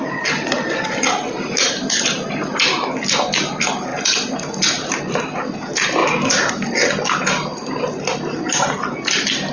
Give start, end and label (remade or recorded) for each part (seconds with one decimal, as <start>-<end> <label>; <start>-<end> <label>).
0.0-9.5 recorded